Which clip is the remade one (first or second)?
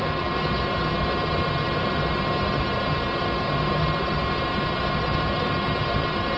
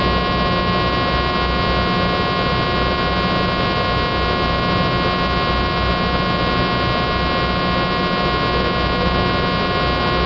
first